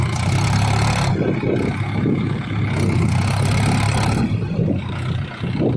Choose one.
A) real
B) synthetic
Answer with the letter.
A